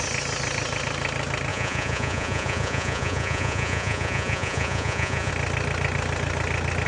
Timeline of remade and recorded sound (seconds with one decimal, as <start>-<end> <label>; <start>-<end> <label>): 0.0-1.5 recorded; 1.5-5.3 remade; 5.3-6.9 recorded